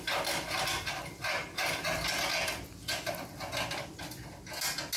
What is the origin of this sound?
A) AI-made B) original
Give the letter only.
B